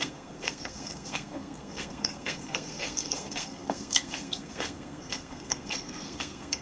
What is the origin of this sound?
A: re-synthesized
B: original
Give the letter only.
A